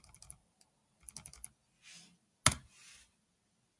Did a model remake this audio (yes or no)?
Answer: no